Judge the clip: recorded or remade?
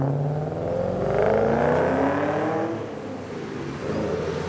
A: recorded